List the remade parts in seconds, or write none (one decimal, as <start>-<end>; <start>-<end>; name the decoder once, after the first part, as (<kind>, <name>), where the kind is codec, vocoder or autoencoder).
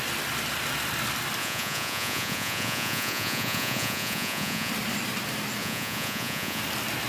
1.4-4.7 (vocoder, Vocos); 5.6-6.6